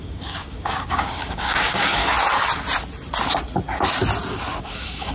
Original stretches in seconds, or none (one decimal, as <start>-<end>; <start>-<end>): 2.0-4.6